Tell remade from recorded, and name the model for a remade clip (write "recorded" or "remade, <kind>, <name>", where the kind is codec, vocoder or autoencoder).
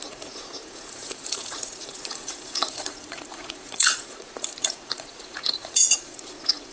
remade, vocoder, Vocos